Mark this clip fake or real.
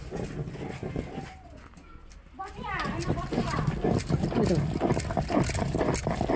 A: real